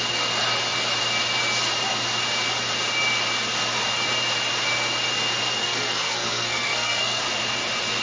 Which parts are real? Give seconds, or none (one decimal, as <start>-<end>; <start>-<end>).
0.0-5.6; 7.2-8.0